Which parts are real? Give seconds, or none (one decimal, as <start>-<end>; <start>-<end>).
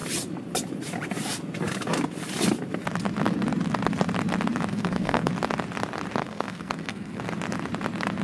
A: 0.0-4.7; 5.3-6.2; 7.2-8.2